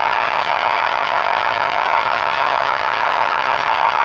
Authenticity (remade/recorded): remade